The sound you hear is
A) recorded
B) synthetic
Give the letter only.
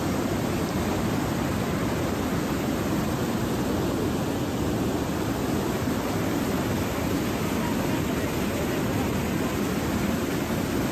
A